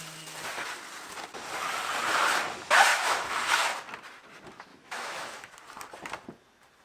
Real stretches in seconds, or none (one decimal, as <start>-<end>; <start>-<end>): 0.0-2.9; 3.6-4.7; 5.5-6.8